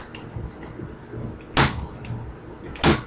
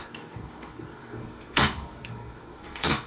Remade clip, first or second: second